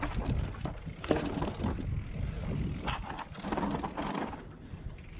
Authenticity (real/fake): real